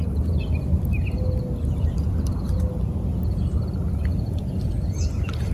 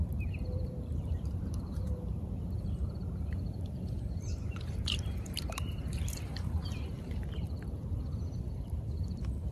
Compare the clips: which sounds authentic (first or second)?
first